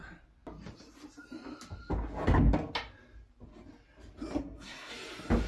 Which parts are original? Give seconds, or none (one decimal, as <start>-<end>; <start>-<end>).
0.0-4.4; 4.9-5.5